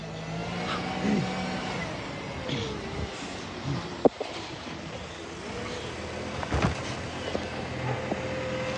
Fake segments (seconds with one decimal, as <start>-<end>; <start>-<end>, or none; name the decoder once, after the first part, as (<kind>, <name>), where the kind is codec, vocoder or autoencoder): none